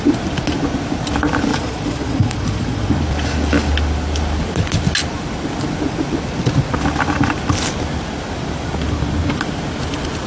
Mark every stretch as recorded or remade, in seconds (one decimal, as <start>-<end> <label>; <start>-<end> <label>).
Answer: 0.0-1.5 recorded; 1.5-2.9 remade; 2.9-10.3 recorded